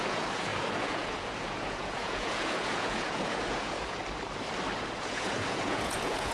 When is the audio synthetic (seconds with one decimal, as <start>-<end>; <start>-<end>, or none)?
0.0-4.0; 4.8-6.3